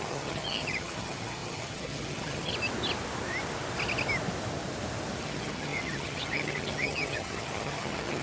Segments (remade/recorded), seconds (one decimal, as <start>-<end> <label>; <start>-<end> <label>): 0.0-2.5 remade; 2.5-5.2 recorded; 5.2-8.2 remade